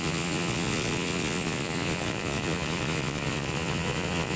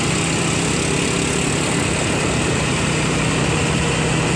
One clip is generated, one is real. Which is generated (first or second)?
first